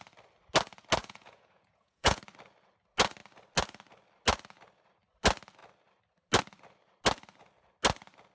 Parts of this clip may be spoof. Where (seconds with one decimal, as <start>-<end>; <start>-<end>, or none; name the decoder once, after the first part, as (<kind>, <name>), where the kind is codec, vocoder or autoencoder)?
1.0-2.2 (vocoder, Vocos)